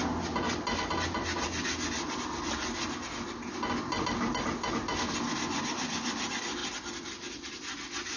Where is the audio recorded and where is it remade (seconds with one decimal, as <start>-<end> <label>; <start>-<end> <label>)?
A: 0.0-8.2 recorded